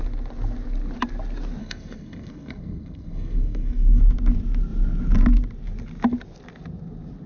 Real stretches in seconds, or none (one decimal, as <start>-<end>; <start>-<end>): 0.0-1.6; 4.0-7.3